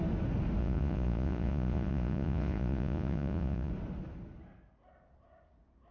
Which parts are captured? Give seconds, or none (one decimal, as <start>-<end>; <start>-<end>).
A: 0.0-0.6; 3.7-5.9